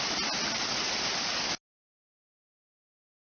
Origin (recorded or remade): recorded